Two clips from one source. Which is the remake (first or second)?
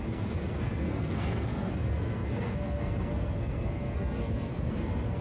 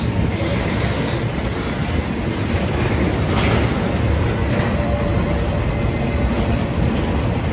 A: first